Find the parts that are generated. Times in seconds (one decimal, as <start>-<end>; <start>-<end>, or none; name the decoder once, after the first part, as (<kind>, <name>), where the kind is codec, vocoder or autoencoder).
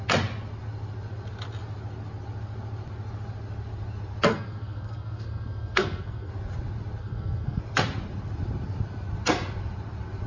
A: 4.3-6.3 (codec, SNAC); 7.0-7.6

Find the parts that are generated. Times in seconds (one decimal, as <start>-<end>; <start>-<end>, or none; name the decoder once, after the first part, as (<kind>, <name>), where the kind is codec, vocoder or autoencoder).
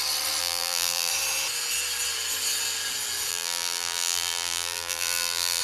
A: 0.4-1.1 (vocoder, BigVGAN v2); 3.3-5.6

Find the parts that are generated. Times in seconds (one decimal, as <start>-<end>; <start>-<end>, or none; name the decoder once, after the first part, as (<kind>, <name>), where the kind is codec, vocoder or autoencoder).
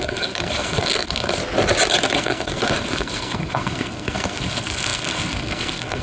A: 0.0-1.4 (codec, SNAC); 1.9-6.0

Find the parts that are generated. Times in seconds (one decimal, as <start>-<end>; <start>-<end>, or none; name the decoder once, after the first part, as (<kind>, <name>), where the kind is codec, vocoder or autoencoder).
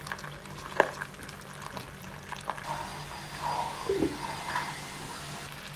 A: none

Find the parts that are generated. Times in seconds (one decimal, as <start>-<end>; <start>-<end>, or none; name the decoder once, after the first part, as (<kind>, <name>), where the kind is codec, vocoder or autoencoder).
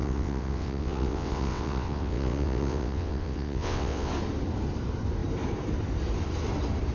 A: 0.0-4.1 (vocoder, WaveNeXt)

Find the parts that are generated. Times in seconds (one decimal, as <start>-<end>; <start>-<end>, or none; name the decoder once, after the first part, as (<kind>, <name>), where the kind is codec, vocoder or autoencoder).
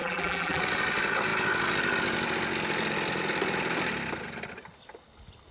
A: 0.0-0.6 (vocoder, BigVGAN v2)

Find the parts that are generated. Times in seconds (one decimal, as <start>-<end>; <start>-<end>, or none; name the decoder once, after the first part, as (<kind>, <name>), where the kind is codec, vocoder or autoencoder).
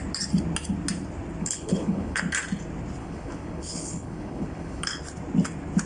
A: 1.4-2.2 (codec, HILCodec); 3.0-5.0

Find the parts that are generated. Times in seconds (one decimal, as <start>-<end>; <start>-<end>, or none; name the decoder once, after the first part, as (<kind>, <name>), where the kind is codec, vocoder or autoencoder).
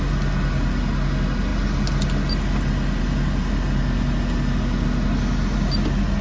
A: none